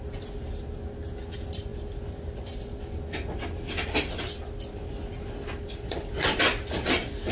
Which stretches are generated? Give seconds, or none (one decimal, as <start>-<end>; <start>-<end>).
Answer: none